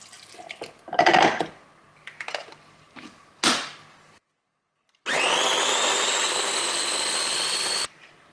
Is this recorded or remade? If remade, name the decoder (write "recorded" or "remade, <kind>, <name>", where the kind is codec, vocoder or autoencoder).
recorded